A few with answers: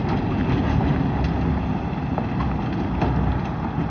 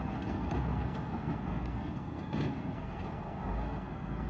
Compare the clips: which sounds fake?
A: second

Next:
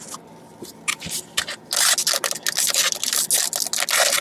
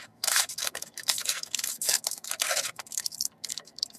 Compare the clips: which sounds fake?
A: second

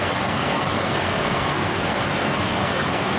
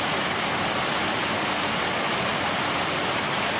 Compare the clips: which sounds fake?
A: first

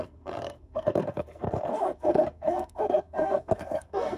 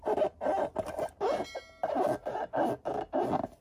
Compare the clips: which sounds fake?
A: first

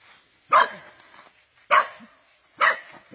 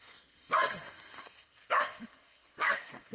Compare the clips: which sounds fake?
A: second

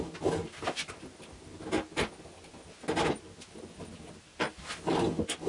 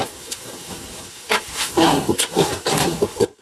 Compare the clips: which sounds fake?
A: second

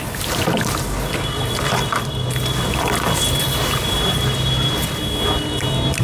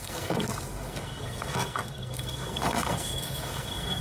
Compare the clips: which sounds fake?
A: second